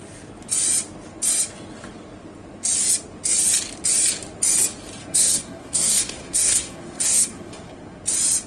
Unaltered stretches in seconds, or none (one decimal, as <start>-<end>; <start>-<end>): 0.0-5.0; 8.0-8.5